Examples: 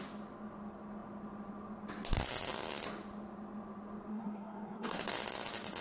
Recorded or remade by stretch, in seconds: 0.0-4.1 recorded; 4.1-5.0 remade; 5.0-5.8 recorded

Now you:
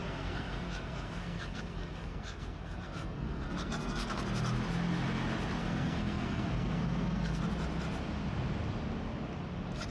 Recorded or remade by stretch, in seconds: 0.0-4.2 remade; 4.2-5.6 recorded; 5.6-7.4 remade; 7.4-9.9 recorded